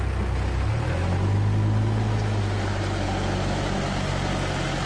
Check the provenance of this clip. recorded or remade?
recorded